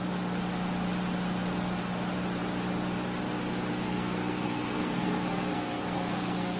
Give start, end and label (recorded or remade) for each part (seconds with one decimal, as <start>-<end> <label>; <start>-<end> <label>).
0.0-3.7 recorded; 3.7-6.6 remade